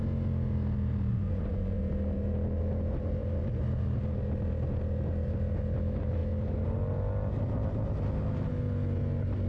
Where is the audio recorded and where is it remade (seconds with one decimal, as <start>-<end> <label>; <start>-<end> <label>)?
0.0-1.1 recorded; 1.1-1.8 remade; 1.8-9.5 recorded

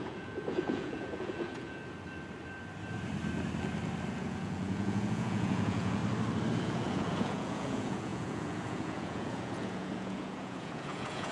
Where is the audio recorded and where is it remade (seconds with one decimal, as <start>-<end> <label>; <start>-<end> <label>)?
0.0-1.8 remade; 1.8-4.1 recorded; 4.1-6.0 remade; 6.0-6.6 recorded; 6.6-11.3 remade

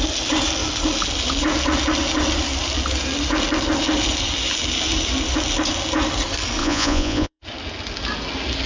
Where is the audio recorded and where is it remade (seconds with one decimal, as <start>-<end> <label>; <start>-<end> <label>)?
0.0-6.6 recorded; 6.6-7.4 remade; 7.4-8.7 recorded

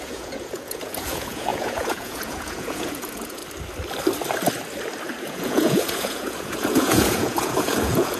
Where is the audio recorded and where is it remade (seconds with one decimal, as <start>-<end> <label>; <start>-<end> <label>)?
0.0-3.4 remade; 3.4-5.2 recorded; 5.2-8.2 remade